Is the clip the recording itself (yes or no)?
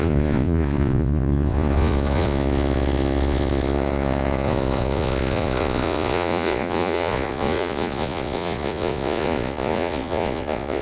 no